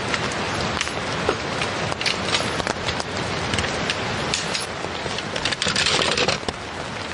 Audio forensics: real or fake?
real